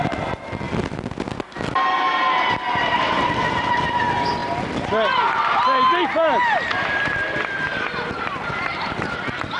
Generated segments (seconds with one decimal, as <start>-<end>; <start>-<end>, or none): none